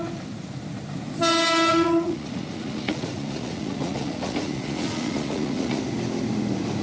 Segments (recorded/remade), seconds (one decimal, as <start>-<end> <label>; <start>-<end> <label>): 0.0-1.7 recorded; 1.7-5.8 remade; 5.8-6.8 recorded